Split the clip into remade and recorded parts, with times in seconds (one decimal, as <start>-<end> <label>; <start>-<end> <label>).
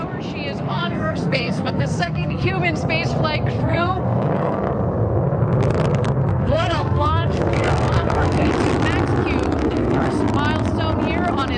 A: 0.0-0.7 recorded; 0.7-2.5 remade; 2.5-3.6 recorded; 3.6-4.7 remade; 4.7-6.3 recorded; 6.3-8.5 remade; 8.5-9.6 recorded; 9.6-10.2 remade; 10.2-11.6 recorded